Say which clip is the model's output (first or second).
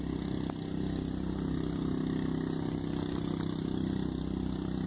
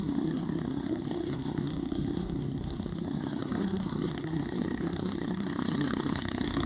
second